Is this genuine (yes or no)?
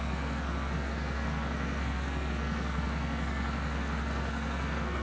no